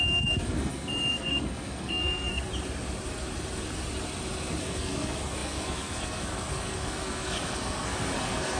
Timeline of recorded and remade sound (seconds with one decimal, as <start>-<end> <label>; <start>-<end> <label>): 0.0-2.5 remade; 2.5-4.6 recorded; 4.6-8.6 remade